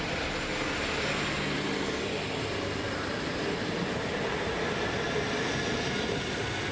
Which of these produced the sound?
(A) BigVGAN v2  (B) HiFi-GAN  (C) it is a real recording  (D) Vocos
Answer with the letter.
C